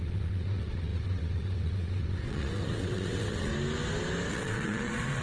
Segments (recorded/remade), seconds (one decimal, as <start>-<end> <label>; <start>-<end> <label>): 0.0-3.5 remade; 3.5-4.3 recorded; 4.3-5.2 remade